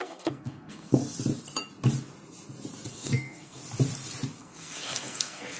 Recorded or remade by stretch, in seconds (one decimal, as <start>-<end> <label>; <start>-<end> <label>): 0.0-1.0 remade; 1.0-2.9 recorded; 2.9-3.6 remade; 3.6-4.4 recorded; 4.4-5.6 remade